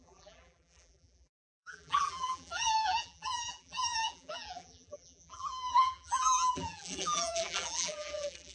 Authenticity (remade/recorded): remade